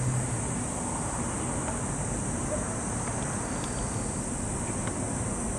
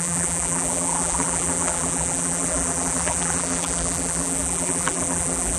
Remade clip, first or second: second